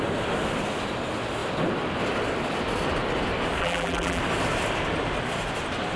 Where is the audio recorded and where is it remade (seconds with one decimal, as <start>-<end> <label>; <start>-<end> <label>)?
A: 0.0-3.6 recorded; 3.6-4.2 remade; 4.2-6.0 recorded